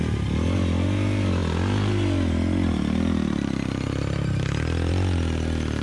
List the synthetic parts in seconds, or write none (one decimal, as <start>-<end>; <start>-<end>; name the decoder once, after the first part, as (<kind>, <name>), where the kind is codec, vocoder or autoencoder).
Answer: none